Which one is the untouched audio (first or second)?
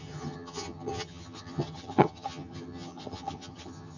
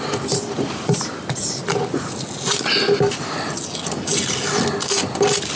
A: second